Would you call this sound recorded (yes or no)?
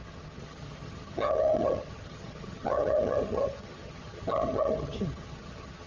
no